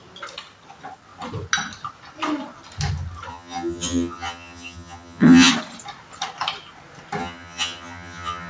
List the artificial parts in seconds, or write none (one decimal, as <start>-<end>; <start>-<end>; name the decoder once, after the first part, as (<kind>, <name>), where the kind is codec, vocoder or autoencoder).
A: 3.3-5.5 (vocoder, HiFi-GAN); 7.2-8.5